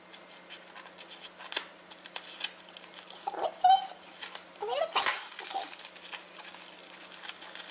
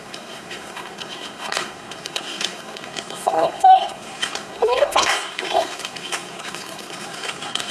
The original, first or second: first